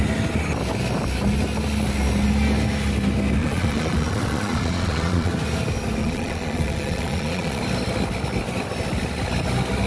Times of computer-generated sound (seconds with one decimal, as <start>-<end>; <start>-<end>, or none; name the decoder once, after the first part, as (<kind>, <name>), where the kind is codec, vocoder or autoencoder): 3.4-5.3 (vocoder, Vocos); 6.0-7.6